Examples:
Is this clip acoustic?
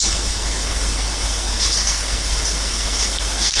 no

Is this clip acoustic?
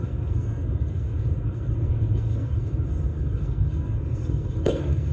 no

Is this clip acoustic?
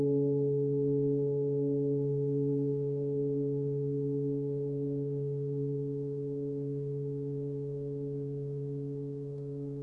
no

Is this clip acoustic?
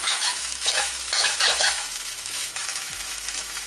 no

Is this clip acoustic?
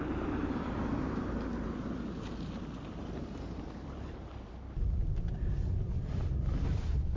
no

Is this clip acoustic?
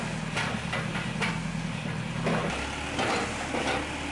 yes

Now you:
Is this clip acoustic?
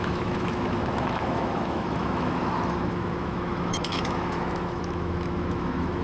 no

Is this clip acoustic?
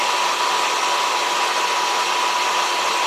yes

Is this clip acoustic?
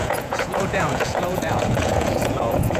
no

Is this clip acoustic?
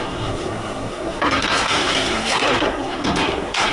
no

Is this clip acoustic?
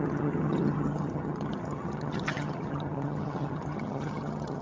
no